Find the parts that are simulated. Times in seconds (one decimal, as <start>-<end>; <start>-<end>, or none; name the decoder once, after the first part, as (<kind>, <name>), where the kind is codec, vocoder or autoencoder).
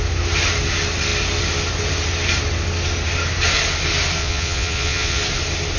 4.2-5.2 (vocoder, Vocos)